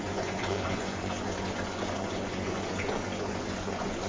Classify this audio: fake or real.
fake